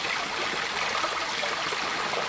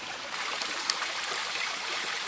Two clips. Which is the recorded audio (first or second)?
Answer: first